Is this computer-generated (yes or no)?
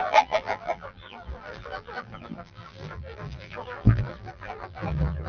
yes